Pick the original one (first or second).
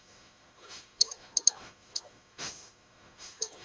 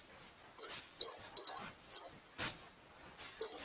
second